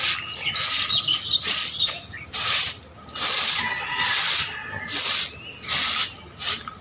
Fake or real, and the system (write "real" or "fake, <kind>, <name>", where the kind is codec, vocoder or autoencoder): real